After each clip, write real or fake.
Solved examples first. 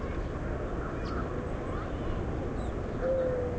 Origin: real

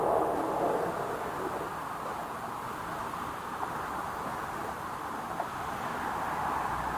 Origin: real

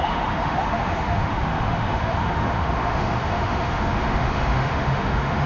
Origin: fake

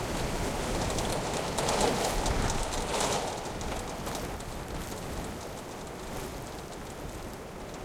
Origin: real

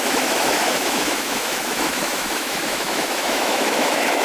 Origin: fake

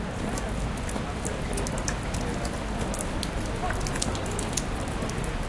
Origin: real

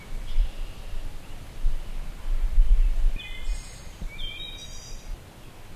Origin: real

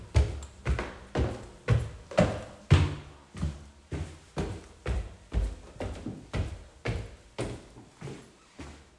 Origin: real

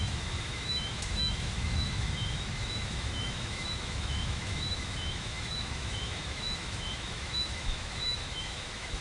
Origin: fake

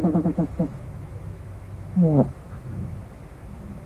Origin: fake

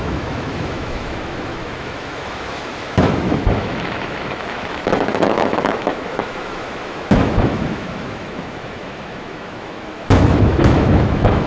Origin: fake